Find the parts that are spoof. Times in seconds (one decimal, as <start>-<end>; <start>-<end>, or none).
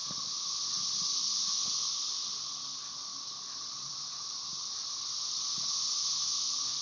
1.9-5.2